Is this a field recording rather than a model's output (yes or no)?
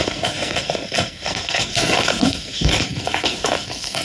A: no